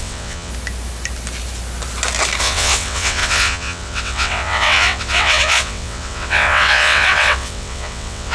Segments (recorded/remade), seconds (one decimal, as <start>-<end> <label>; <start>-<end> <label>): 0.0-0.5 remade; 0.5-2.4 recorded; 2.4-8.3 remade